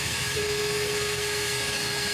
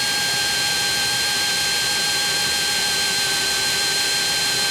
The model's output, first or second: first